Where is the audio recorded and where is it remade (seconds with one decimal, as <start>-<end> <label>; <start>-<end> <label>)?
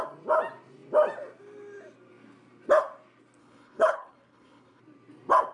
0.0-3.4 recorded; 3.4-4.8 remade; 4.8-5.5 recorded